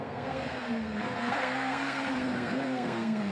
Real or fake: fake